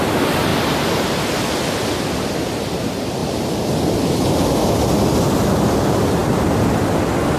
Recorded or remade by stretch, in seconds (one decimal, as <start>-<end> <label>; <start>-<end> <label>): 0.0-7.4 recorded